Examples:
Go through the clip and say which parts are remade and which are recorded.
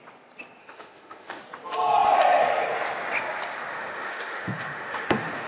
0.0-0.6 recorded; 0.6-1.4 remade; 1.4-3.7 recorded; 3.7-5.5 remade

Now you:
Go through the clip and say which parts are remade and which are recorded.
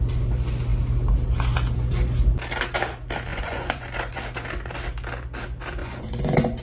0.0-3.3 recorded; 3.3-4.2 remade; 4.2-5.8 recorded; 5.8-6.6 remade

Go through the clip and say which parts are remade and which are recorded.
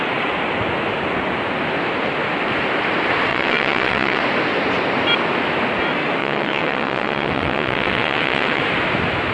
0.0-3.3 recorded; 3.3-4.2 remade; 4.2-6.2 recorded; 6.2-8.6 remade; 8.6-9.3 recorded